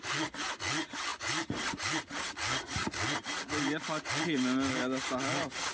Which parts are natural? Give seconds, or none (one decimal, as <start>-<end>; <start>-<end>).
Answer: 0.0-5.7